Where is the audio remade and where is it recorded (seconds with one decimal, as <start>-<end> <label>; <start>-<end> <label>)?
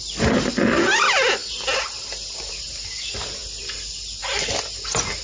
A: 0.0-5.2 recorded